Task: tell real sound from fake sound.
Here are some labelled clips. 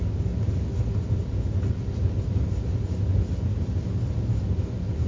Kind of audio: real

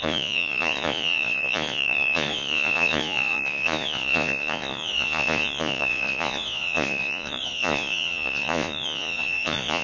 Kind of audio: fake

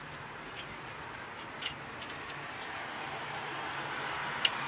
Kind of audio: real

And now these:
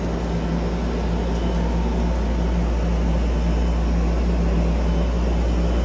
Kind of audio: real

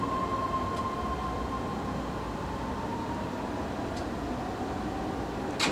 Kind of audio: real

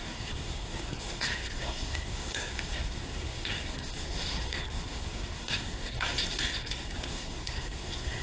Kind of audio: fake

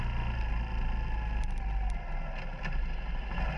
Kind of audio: real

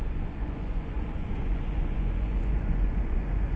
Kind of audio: fake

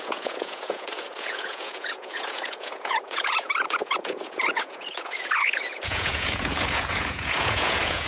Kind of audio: fake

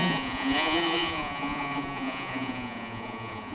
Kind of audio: fake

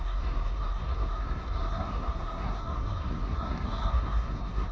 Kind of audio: fake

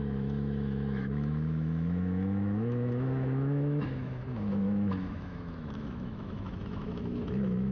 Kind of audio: fake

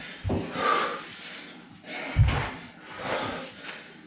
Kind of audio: real